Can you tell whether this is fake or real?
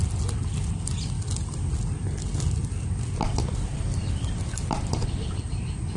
real